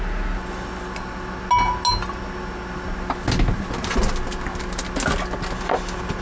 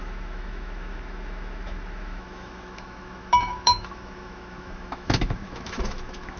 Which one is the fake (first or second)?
second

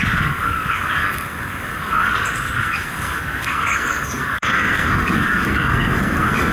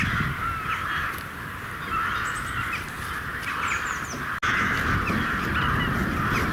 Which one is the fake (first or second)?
first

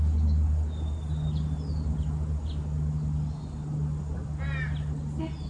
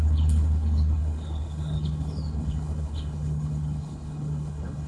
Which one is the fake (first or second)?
second